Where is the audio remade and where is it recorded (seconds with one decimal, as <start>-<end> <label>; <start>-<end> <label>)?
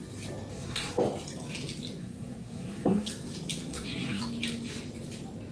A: 0.0-0.5 recorded; 0.5-1.0 remade; 1.0-2.0 recorded; 2.0-3.1 remade; 3.1-3.7 recorded; 3.7-4.2 remade; 4.2-5.5 recorded